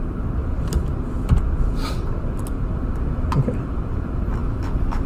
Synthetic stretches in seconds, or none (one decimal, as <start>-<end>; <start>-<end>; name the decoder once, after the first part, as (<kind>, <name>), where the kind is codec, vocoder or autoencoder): 4.4-5.1 (autoencoder, DAC-VAE)